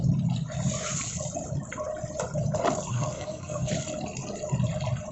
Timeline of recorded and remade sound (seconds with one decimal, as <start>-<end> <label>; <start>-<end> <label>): 0.0-2.9 recorded; 2.9-3.7 remade; 3.7-5.1 recorded

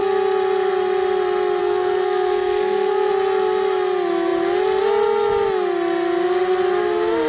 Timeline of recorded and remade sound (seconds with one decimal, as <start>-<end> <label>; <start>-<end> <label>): 0.0-1.6 recorded; 1.6-3.1 remade; 3.1-7.3 recorded

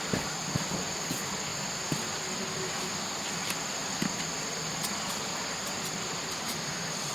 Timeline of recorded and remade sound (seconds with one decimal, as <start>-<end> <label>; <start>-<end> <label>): 0.0-7.1 recorded

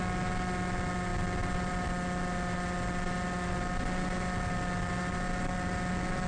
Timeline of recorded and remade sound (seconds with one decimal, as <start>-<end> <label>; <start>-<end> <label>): 0.0-6.3 recorded

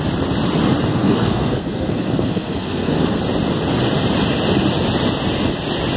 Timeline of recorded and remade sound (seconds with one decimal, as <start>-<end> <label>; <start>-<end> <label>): 0.0-0.9 recorded; 0.9-3.2 remade; 3.2-6.0 recorded

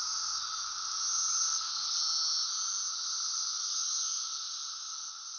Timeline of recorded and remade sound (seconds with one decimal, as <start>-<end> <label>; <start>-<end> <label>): 0.0-1.4 recorded; 1.4-2.0 remade; 2.0-5.4 recorded

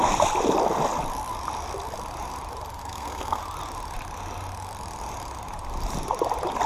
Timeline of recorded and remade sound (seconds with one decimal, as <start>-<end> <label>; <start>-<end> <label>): 0.0-2.8 recorded; 2.8-3.4 remade; 3.4-6.7 recorded